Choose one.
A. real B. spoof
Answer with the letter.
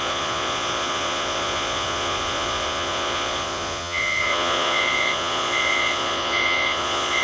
B